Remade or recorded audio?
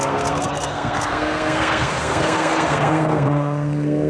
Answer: remade